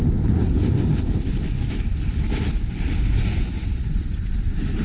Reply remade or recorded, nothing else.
recorded